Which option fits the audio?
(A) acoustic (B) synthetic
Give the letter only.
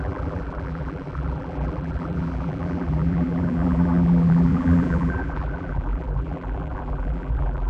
B